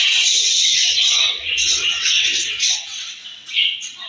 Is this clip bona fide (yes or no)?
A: no